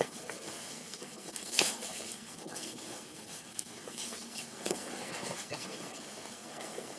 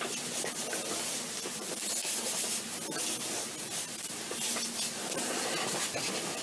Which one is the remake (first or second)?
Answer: first